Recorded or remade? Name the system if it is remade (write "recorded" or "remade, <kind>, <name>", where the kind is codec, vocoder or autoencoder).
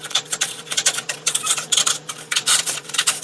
remade, vocoder, Vocos